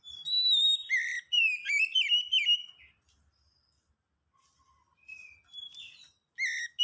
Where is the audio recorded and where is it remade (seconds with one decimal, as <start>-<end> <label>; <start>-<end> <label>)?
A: 0.0-0.4 recorded; 0.4-2.4 remade; 2.4-6.8 recorded